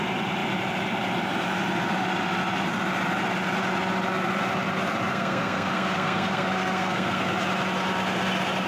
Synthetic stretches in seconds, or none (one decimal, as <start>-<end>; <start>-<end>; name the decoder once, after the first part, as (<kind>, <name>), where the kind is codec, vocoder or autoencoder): 5.1-7.2 (codec, SNAC)